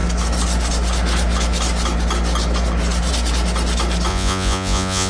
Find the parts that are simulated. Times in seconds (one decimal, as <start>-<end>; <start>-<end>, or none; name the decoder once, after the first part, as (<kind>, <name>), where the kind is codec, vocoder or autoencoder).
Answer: 4.1-5.1 (vocoder, Vocos)